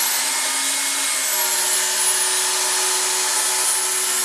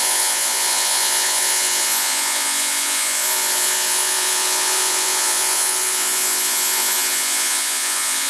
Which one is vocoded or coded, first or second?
second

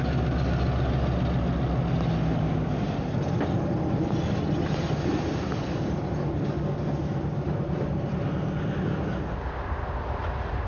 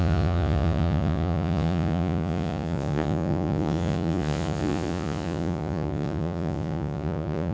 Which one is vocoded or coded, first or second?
second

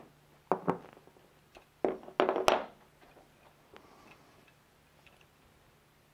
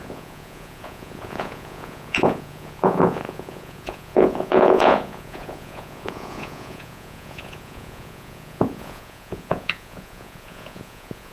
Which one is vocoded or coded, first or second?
second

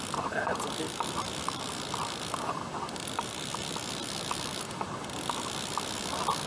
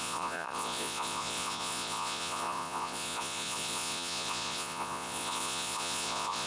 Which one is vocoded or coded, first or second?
second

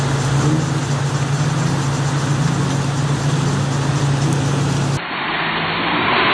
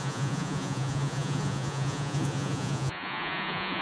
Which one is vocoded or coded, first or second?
second